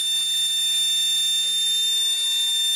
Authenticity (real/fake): real